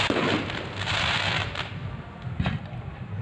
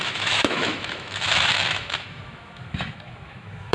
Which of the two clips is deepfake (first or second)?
second